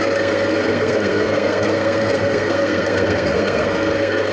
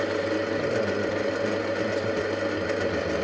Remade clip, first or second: first